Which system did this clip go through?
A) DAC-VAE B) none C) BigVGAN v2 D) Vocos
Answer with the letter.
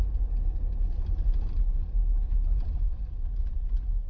B